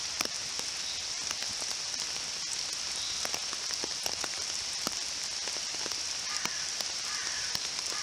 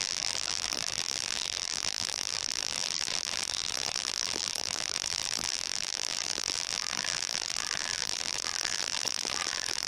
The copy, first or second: second